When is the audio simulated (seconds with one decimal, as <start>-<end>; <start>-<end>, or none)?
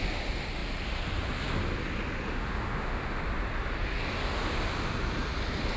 2.3-3.2